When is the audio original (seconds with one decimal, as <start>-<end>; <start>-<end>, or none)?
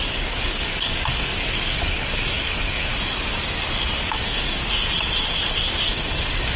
2.9-4.0; 4.6-5.9